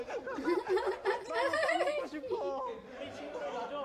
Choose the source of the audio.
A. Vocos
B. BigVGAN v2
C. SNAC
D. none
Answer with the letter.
D